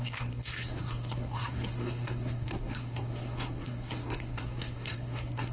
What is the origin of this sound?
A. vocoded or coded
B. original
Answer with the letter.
A